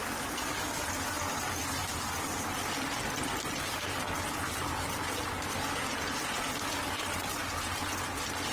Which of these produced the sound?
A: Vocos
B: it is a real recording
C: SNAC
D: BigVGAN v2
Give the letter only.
B